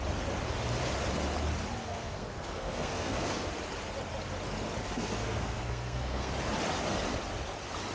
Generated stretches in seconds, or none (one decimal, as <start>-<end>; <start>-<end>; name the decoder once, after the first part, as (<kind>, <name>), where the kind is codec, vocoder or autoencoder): 1.8-3.5 (codec, SNAC); 4.8-6.3